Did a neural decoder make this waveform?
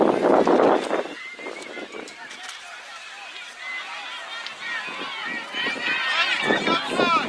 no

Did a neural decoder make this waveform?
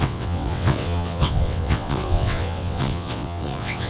yes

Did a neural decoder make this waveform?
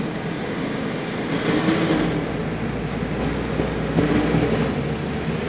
no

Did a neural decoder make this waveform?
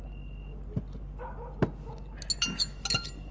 no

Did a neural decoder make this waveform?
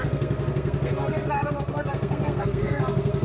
yes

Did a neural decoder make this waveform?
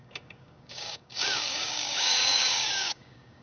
yes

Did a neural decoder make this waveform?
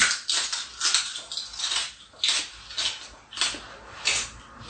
no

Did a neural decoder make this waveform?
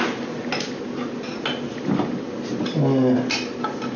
no